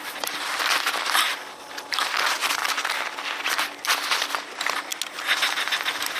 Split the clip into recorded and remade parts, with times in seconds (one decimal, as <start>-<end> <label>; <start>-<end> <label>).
0.0-1.3 remade; 1.3-1.9 recorded; 1.9-4.9 remade; 4.9-6.2 recorded